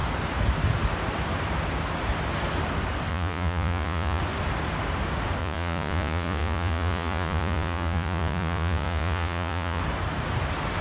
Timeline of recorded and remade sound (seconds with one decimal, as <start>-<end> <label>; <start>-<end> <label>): 0.0-3.1 recorded; 3.1-4.2 remade; 4.2-5.4 recorded; 5.4-9.8 remade; 9.8-10.8 recorded